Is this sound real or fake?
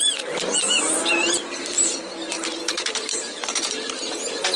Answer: fake